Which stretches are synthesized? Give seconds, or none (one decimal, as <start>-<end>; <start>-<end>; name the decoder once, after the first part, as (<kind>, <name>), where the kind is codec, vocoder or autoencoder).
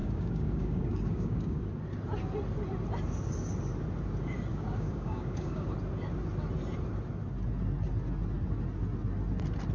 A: 0.0-1.6 (codec, DAC); 4.5-5.7